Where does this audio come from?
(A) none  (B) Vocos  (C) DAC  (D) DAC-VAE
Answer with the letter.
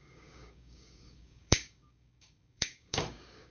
C